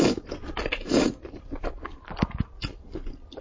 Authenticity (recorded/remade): recorded